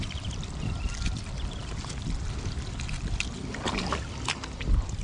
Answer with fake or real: real